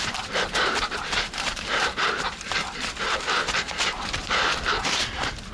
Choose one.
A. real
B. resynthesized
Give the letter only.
B